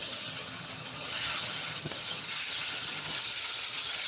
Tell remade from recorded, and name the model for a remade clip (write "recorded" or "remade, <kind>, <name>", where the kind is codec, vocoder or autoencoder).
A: remade, vocoder, HiFi-GAN